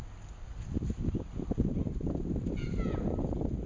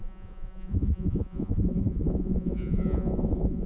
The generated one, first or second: second